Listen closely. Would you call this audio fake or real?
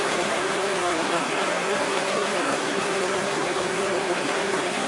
fake